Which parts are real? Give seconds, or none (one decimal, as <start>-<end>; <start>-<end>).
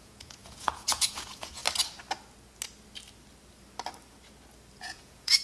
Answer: 1.6-4.8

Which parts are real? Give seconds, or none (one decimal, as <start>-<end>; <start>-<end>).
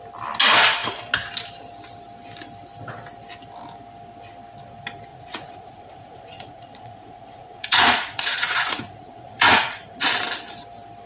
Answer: 0.0-5.1; 10.1-11.1